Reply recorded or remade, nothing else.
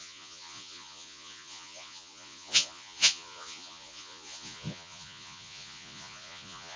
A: remade